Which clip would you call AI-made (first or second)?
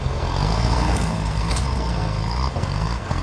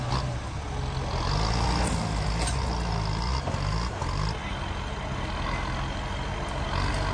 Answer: first